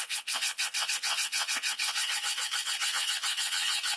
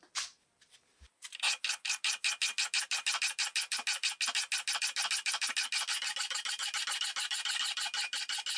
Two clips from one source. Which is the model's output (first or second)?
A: first